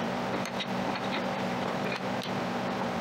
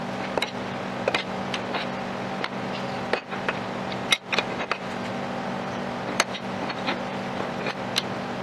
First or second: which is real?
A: second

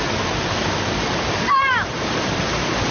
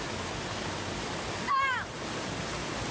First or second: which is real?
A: second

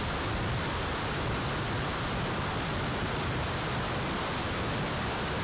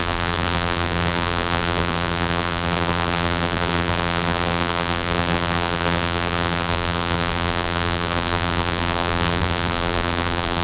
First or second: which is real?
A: first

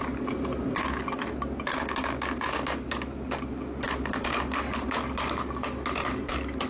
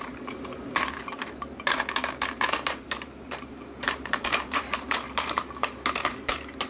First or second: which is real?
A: first